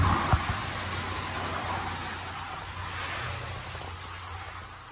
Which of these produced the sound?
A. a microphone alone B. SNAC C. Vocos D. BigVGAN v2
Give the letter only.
A